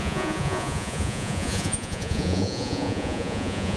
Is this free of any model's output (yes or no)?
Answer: no